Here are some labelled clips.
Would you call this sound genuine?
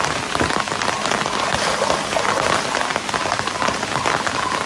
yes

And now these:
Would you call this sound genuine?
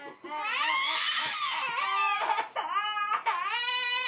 yes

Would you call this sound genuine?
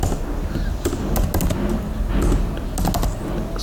yes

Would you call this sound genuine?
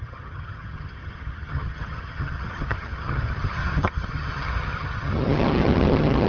no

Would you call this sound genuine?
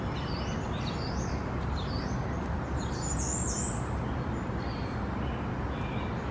yes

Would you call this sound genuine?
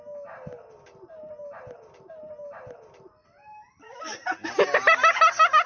yes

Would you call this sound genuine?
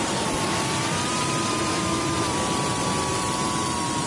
no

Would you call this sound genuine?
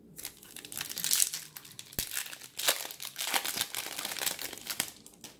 yes